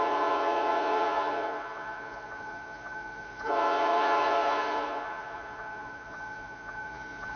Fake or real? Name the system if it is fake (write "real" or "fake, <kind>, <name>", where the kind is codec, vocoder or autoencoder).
fake, vocoder, Vocos